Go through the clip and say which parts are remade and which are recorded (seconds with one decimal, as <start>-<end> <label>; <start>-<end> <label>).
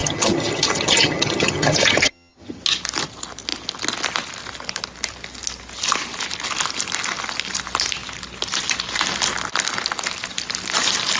0.0-2.6 remade; 2.6-11.2 recorded